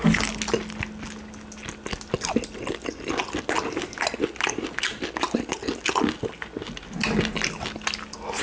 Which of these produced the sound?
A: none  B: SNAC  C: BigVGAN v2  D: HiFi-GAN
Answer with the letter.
A